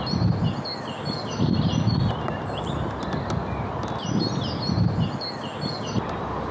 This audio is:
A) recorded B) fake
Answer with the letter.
A